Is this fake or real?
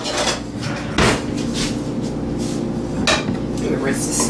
real